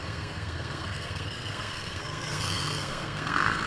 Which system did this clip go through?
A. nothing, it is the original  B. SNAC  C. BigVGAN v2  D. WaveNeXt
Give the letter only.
B